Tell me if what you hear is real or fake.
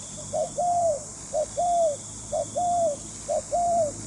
fake